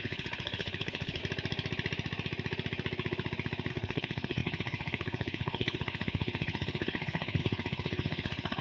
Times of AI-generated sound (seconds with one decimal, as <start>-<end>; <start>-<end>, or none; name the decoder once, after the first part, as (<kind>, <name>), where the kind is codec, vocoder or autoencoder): 0.0-1.2 (codec, HILCodec); 3.7-8.6